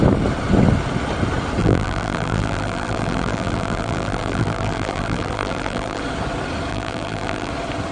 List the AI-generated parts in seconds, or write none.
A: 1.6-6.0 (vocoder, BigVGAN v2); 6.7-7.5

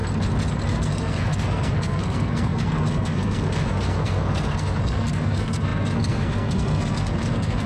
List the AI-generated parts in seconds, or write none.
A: 0.7-7.7 (codec, SNAC)

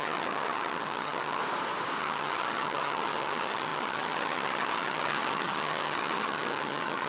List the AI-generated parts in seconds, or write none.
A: 0.0-1.4 (vocoder, HiFi-GAN); 2.0-7.1

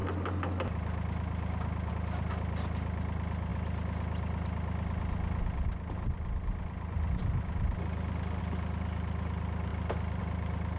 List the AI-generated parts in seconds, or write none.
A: none

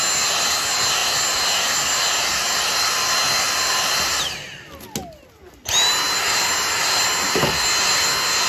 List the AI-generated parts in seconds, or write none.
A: none

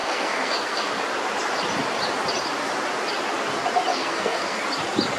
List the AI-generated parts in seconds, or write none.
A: 0.0-0.9 (codec, SNAC); 3.9-4.6

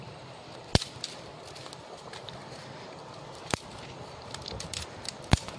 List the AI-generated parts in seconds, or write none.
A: 3.0-3.9 (vocoder, BigVGAN v2)

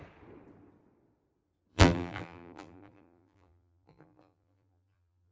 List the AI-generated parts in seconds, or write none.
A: 1.7-5.3 (vocoder, BigVGAN v2)